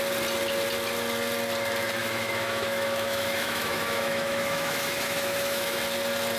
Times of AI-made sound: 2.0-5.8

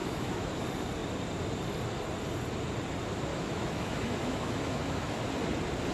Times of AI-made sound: 0.0-0.6; 3.3-5.2

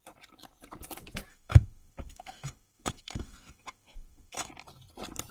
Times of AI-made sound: 1.3-4.5

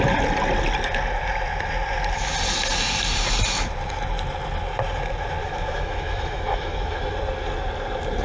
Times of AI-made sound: 5.4-7.0

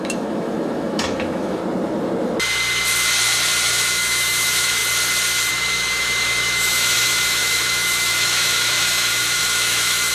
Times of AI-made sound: 0.0-1.6; 3.7-4.8; 5.5-10.1

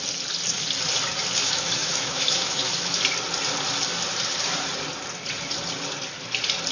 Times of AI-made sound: 1.4-3.0

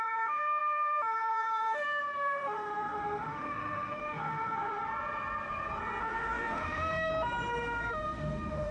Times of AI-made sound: 0.0-4.8; 6.0-7.1; 7.9-8.7